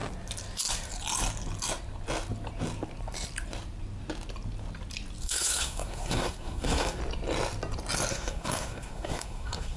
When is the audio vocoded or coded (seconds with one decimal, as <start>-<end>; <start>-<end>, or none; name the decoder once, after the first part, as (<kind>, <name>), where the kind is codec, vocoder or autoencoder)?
5.2-7.0 (codec, SNAC); 8.1-9.8